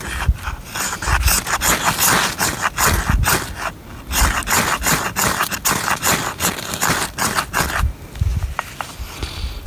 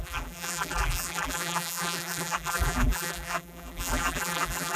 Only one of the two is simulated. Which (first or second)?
second